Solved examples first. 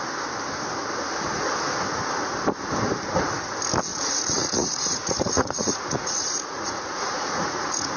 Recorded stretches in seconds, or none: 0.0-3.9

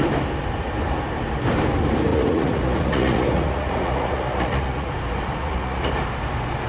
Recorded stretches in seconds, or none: 0.0-2.1; 4.9-5.4; 5.9-6.7

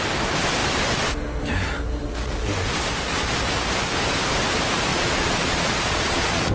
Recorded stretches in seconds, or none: 0.0-4.9

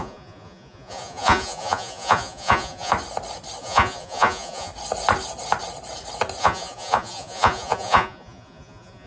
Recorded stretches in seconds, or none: 2.9-3.6; 4.7-6.4

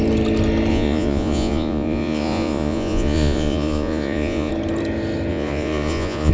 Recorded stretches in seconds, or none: 0.0-0.7; 4.5-5.3

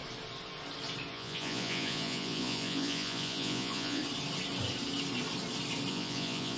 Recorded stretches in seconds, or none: 0.0-1.1; 4.0-5.9

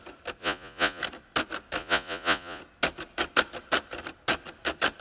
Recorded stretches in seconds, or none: 0.0-0.4; 1.0-1.8; 2.6-5.0